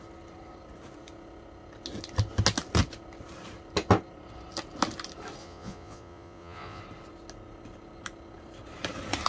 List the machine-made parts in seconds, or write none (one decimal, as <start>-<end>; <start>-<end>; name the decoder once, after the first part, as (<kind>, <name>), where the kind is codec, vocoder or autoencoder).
5.4-6.8 (vocoder, Vocos)